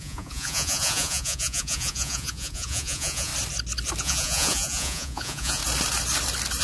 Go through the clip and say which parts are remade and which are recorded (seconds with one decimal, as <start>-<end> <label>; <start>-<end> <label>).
0.0-3.3 remade; 3.3-4.0 recorded; 4.0-5.6 remade; 5.6-6.6 recorded